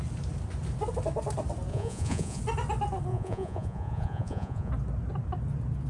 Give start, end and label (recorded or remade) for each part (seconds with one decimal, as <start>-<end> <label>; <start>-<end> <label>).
0.0-1.7 recorded; 1.7-2.4 remade; 2.4-3.1 recorded; 3.1-4.7 remade; 4.7-5.9 recorded